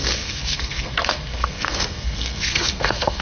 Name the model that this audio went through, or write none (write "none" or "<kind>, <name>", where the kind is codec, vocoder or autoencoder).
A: codec, SNAC